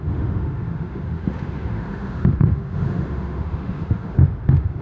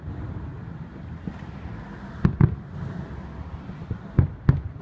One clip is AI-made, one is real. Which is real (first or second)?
second